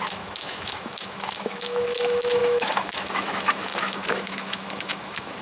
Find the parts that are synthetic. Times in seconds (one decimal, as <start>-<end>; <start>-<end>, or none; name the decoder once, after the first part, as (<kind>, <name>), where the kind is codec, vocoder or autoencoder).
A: 0.0-5.4 (autoencoder, DAC-VAE)